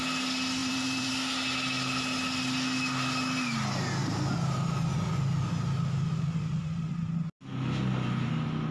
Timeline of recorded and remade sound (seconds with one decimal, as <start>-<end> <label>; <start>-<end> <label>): 0.0-0.6 recorded; 0.6-1.1 remade; 1.1-8.7 recorded